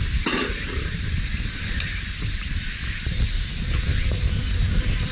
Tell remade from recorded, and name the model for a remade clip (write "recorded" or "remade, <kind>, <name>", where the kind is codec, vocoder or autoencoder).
recorded